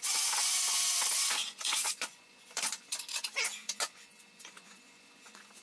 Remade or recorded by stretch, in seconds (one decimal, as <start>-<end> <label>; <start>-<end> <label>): 0.0-5.6 remade